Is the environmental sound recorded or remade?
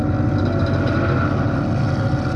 recorded